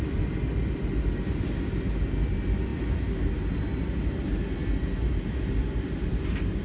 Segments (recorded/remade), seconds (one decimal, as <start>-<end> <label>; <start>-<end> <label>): 0.0-6.6 recorded